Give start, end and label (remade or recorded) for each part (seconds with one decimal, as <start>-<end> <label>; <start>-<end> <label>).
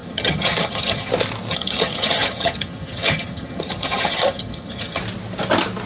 0.0-1.1 remade; 1.1-1.5 recorded; 1.5-5.0 remade; 5.0-5.9 recorded